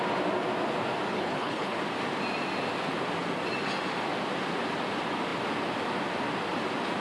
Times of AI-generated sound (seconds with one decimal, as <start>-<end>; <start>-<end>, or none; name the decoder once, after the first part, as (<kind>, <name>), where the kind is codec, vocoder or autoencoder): 1.1-1.8 (codec, HILCodec)